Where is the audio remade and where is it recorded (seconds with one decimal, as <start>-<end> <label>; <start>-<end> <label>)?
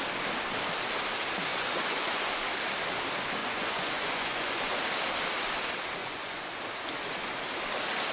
0.0-1.5 recorded; 1.5-2.4 remade; 2.4-3.4 recorded; 3.4-4.8 remade; 4.8-6.0 recorded; 6.0-6.6 remade; 6.6-8.1 recorded